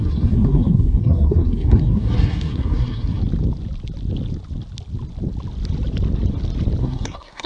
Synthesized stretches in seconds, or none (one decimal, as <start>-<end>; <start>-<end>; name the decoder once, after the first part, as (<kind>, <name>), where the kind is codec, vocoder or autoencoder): 0.0-3.2 (codec, SNAC); 6.8-7.5